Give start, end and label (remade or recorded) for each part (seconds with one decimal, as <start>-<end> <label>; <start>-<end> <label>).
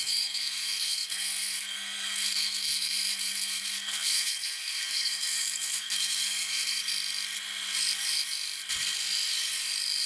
0.0-6.8 remade; 6.8-10.1 recorded